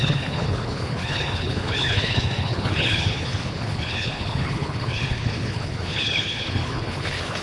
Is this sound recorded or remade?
remade